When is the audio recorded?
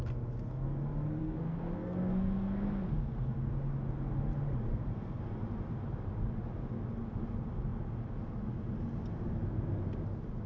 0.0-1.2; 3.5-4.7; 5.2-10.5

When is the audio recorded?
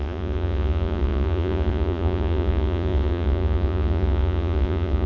none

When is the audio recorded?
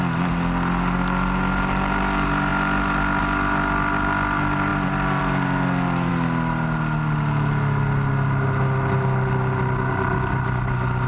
0.0-11.1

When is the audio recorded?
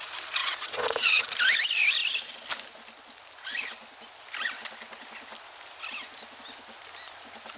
0.0-0.4; 1.2-7.6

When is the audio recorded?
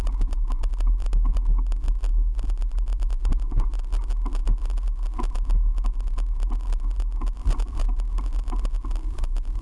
0.0-9.6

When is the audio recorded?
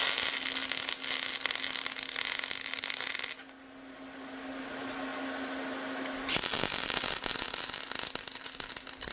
0.0-9.1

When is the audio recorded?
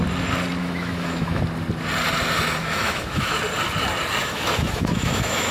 0.0-0.6; 1.4-2.6; 3.4-4.2